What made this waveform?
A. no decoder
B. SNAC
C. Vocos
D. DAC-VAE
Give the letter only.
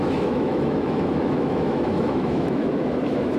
D